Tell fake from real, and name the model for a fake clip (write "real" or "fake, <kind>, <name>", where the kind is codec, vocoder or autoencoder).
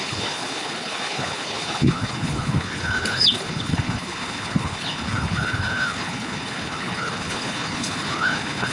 fake, codec, HILCodec